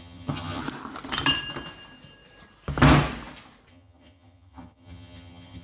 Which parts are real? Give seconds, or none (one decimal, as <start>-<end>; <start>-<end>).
0.6-3.7